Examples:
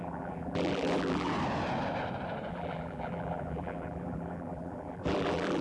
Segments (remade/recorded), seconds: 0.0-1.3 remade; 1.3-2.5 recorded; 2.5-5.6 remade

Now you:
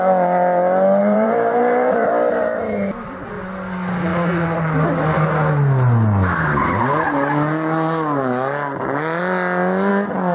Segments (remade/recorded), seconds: 0.0-1.0 recorded; 1.0-2.1 remade; 2.1-10.3 recorded

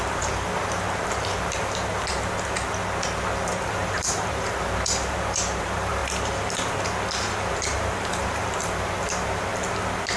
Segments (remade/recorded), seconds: 0.0-2.1 remade; 2.1-3.6 recorded; 3.6-6.0 remade; 6.0-7.5 recorded; 7.5-9.5 remade; 9.5-10.2 recorded

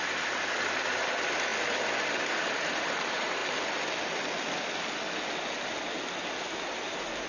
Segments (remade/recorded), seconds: 0.0-1.5 remade; 1.5-2.2 recorded; 2.2-3.4 remade; 3.4-7.3 recorded

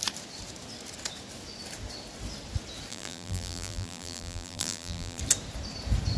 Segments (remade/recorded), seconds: 0.0-2.9 recorded; 2.9-5.2 remade; 5.2-6.2 recorded

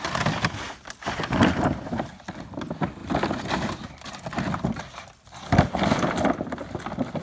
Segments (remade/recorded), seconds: 0.0-7.2 recorded

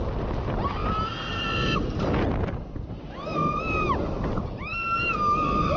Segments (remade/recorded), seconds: 0.0-0.8 remade; 0.8-4.3 recorded; 4.3-4.7 remade; 4.7-5.8 recorded

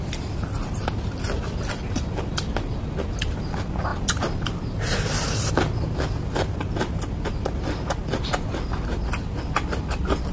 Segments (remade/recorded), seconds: 0.0-3.9 recorded; 3.9-5.6 remade; 5.6-10.3 recorded